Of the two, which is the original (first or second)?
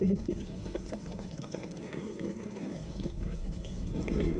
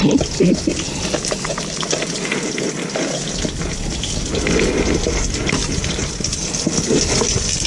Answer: second